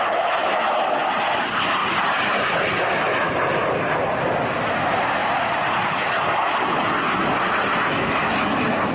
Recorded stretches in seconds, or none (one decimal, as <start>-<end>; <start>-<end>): 0.0-8.9